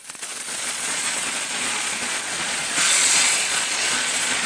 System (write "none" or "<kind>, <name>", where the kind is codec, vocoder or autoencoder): vocoder, Vocos